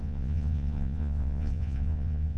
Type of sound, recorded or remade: remade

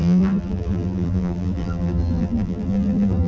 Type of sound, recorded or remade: remade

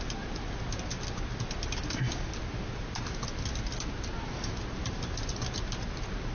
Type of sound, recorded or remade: recorded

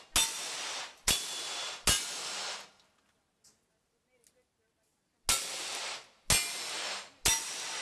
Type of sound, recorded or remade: recorded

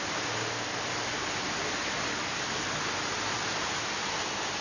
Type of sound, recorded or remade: recorded